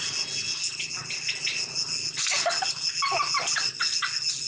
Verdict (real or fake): real